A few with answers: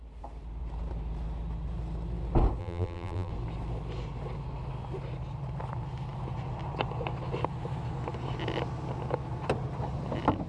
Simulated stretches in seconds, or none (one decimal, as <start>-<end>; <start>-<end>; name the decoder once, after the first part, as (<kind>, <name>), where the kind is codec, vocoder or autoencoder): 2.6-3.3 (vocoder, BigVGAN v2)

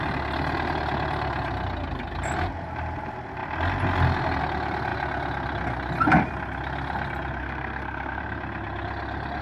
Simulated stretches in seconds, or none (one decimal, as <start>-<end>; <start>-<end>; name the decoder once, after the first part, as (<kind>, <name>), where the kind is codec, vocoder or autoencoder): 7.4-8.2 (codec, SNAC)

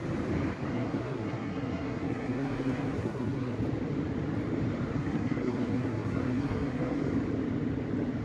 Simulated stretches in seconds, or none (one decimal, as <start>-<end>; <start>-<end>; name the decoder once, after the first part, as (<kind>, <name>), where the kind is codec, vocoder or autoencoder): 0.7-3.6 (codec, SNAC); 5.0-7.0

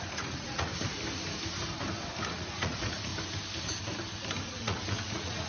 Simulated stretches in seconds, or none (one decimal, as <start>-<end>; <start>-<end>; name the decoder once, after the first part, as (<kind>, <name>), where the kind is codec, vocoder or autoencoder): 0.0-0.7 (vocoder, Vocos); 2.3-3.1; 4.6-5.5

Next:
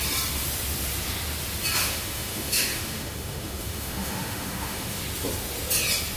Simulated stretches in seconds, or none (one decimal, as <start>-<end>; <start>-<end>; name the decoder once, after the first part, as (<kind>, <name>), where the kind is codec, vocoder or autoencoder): 1.8-5.0 (autoencoder, DAC-VAE)

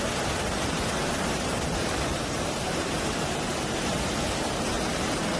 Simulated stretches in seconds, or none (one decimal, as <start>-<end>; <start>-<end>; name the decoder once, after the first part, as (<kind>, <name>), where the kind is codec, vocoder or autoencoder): 0.9-4.1 (vocoder, BigVGAN v2)

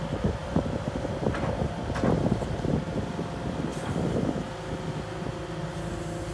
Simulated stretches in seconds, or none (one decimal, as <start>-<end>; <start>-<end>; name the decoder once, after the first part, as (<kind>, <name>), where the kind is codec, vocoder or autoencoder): none